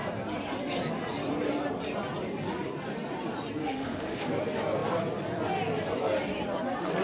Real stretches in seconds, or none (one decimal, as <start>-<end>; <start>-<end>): 0.0-3.6; 4.3-7.0